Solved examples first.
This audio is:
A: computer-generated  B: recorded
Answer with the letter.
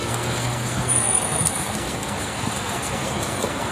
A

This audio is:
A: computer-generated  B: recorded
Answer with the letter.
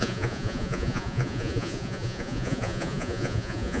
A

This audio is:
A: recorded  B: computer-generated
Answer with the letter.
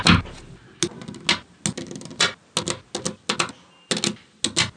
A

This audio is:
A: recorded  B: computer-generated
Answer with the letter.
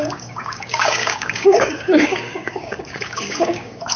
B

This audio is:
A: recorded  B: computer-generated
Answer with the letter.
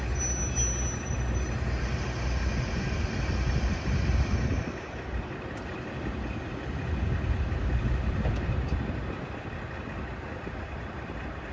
A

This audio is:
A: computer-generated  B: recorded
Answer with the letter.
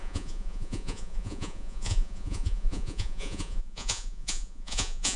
A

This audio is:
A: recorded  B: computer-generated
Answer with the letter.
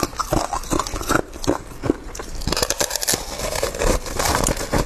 A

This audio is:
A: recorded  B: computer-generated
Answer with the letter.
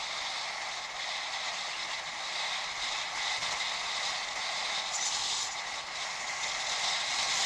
A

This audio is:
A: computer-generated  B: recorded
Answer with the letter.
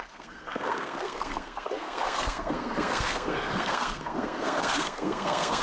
A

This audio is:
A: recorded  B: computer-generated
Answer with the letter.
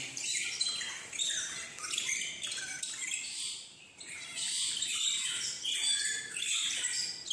B